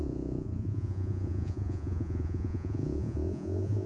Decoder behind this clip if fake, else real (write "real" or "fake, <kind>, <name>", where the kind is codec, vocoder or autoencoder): fake, vocoder, Vocos